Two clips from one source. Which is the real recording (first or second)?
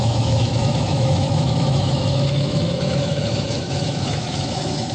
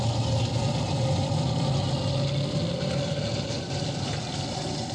second